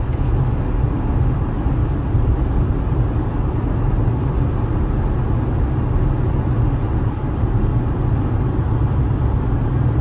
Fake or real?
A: real